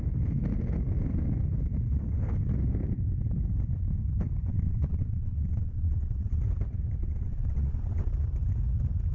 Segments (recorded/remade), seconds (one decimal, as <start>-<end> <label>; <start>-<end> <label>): 0.0-4.5 recorded; 4.5-6.4 remade; 6.4-7.0 recorded; 7.0-8.1 remade; 8.1-9.1 recorded